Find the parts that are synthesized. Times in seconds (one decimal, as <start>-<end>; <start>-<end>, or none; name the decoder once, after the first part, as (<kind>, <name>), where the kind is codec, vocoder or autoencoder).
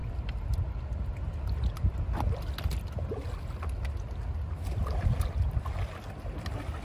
none